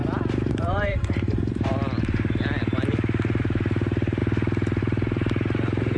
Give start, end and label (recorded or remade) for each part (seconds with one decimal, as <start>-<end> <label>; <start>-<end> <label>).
0.0-1.7 remade; 1.7-3.4 recorded; 3.4-4.2 remade; 4.2-4.8 recorded; 4.8-6.0 remade